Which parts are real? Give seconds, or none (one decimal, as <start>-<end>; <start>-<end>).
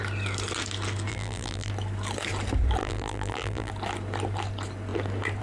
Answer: 0.0-1.1; 1.7-2.8; 3.7-5.4